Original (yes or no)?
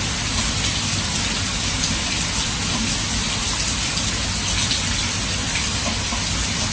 yes